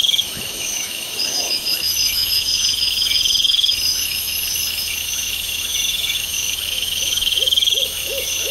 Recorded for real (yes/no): no